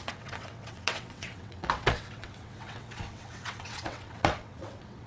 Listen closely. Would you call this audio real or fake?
fake